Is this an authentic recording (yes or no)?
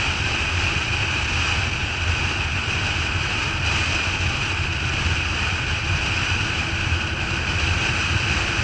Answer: yes